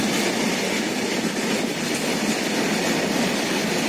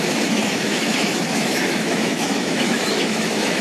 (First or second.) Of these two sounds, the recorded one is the first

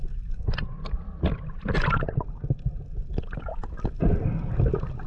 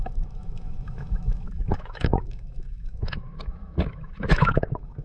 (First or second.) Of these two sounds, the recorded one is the first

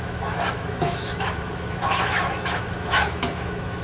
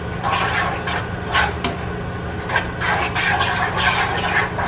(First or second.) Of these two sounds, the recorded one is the second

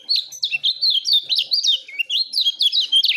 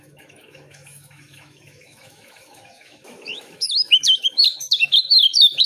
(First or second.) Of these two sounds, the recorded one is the first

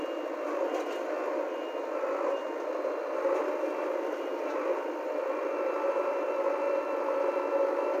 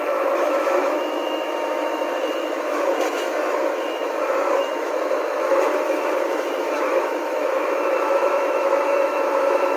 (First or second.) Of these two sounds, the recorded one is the first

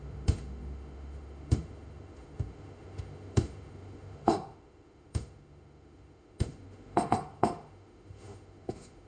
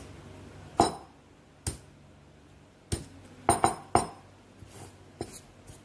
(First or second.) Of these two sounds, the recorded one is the second